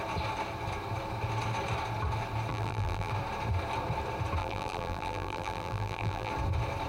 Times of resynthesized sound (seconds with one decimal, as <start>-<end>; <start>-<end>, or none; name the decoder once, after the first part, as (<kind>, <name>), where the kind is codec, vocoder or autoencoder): 2.5-3.1 (vocoder, BigVGAN v2); 4.4-6.3